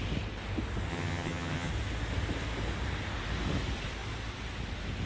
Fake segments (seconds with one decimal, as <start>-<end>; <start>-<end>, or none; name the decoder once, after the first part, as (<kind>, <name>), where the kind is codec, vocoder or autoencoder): 0.9-1.7 (vocoder, HiFi-GAN)